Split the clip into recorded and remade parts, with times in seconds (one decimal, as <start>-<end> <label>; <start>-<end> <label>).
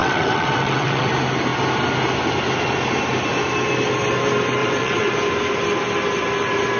0.0-1.1 remade; 1.1-4.6 recorded; 4.6-5.1 remade; 5.1-6.8 recorded